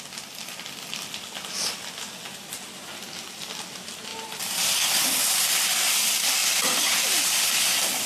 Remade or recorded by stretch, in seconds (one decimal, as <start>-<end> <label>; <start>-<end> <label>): 0.0-4.1 recorded; 4.1-5.6 remade; 5.6-6.4 recorded; 6.4-8.1 remade